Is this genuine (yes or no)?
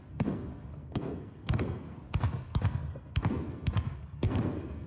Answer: no